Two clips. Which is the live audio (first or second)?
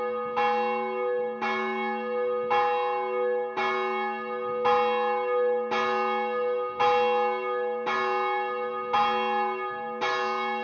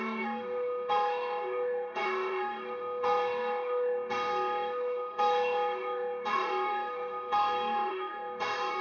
first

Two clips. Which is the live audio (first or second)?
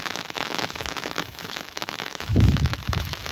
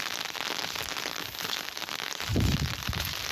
second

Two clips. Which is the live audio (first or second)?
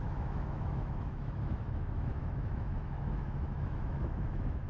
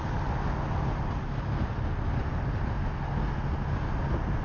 second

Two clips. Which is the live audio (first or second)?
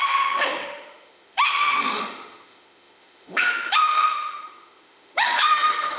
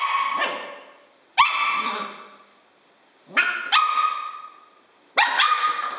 second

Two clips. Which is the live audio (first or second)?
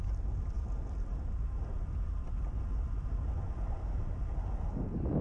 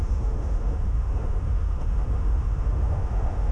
first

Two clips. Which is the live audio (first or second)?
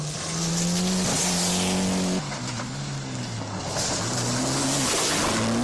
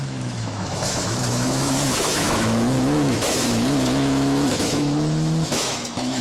first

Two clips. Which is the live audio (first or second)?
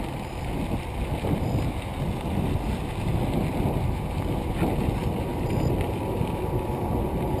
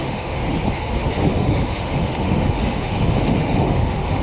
first